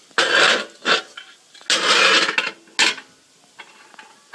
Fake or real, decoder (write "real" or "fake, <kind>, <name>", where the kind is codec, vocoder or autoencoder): real